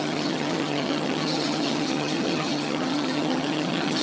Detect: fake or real fake